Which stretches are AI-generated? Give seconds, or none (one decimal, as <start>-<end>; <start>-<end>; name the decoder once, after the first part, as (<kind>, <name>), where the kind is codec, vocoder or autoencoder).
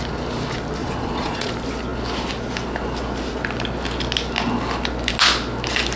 0.8-1.5 (vocoder, Vocos)